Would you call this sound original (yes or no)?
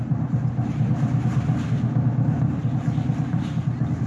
yes